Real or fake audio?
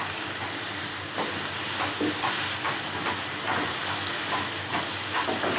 real